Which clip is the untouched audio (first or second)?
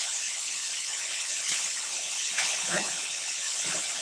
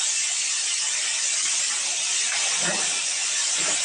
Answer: second